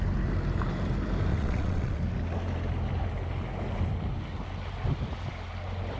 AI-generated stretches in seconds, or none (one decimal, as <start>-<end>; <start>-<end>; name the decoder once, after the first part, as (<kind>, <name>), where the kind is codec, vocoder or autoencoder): 1.3-2.0 (vocoder, WaveNeXt)